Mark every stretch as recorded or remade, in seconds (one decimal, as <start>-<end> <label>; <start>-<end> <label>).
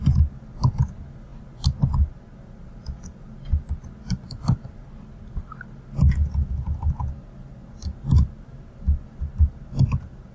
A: 0.0-10.3 recorded